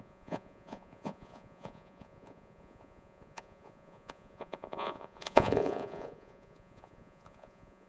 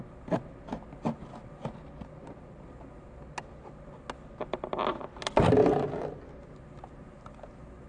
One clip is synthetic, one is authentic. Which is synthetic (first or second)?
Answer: first